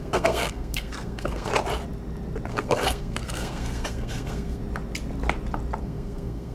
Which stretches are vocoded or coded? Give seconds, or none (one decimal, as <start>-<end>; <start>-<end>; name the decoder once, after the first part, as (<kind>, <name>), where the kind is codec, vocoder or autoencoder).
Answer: 0.0-1.5 (codec, SNAC); 2.5-4.6; 5.8-6.5